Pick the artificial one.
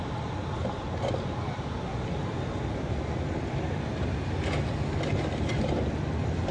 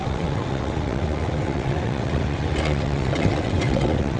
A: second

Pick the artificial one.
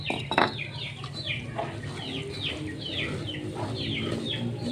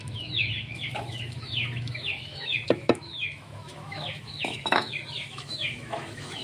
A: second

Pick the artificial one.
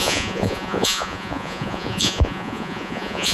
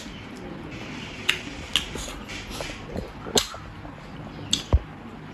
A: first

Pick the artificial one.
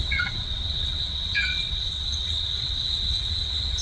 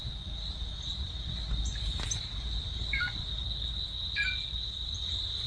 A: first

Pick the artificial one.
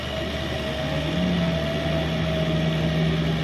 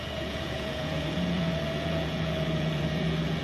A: second